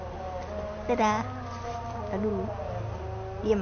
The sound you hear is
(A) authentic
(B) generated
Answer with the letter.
A